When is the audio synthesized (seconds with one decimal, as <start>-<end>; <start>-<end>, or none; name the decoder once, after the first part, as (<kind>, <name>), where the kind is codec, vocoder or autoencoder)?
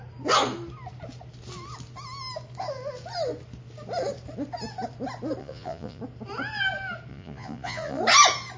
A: 5.4-6.0 (vocoder, Vocos); 7.1-8.0